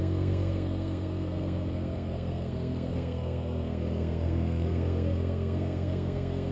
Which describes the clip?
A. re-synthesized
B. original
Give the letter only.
A